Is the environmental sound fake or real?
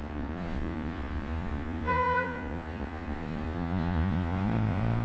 fake